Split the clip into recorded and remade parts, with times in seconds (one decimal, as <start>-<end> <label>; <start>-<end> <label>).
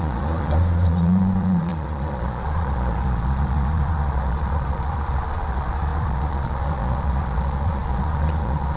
0.0-8.8 remade